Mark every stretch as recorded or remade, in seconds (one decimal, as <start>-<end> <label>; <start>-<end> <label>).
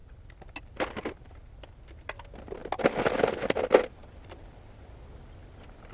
0.0-4.0 recorded; 4.0-4.6 remade; 4.6-5.9 recorded